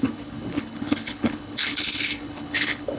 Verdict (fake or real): fake